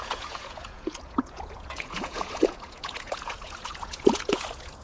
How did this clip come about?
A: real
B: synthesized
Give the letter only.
B